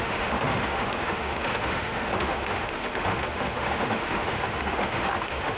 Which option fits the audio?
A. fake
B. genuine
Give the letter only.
A